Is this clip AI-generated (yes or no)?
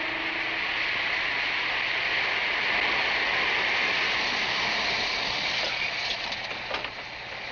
no